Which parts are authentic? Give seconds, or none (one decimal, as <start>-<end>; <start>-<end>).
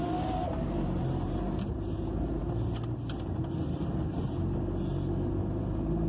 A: 0.0-6.1